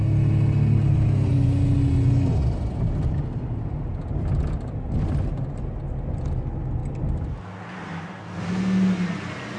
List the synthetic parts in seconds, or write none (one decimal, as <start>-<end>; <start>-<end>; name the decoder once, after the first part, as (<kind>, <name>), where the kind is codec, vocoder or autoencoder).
none